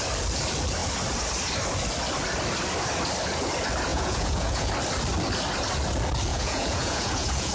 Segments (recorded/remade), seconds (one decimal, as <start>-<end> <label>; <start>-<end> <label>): 0.0-3.9 recorded; 3.9-4.7 remade; 4.7-6.3 recorded; 6.3-7.5 remade